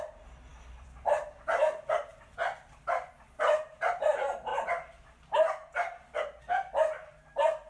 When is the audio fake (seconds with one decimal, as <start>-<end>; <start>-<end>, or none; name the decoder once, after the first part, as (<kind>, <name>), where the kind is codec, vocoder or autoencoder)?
0.5-1.3 (vocoder, BigVGAN v2); 2.1-3.1